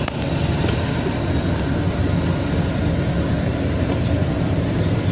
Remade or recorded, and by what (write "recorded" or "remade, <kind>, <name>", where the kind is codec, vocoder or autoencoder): recorded